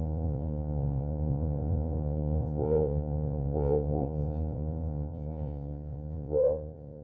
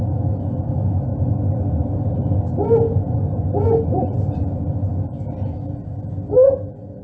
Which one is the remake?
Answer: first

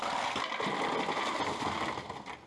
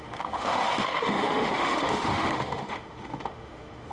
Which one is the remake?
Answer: second